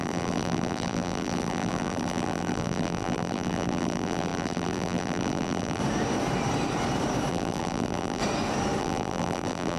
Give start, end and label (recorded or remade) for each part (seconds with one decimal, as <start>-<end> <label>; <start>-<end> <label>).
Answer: 0.0-5.8 remade; 5.8-7.3 recorded; 7.3-8.2 remade; 8.2-8.8 recorded; 8.8-9.8 remade